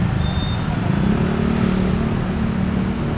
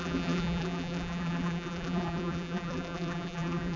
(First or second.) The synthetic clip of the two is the second